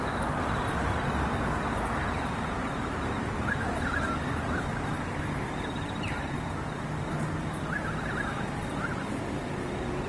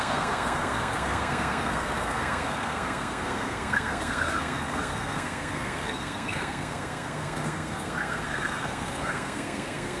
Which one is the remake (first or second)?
second